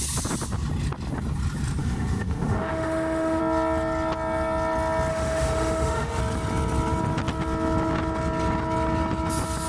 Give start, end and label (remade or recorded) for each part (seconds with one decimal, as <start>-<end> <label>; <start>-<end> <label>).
0.0-1.8 recorded; 1.8-3.4 remade; 3.4-5.1 recorded; 5.1-6.2 remade; 6.2-9.7 recorded